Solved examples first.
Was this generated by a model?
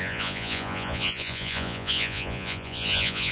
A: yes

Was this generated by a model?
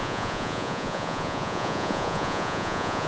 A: yes